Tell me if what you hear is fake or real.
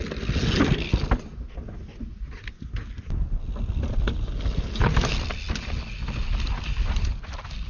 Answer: real